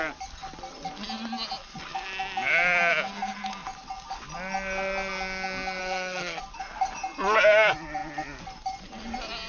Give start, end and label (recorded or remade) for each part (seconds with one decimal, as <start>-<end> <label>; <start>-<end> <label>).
0.0-5.8 recorded; 5.8-6.4 remade; 6.4-9.5 recorded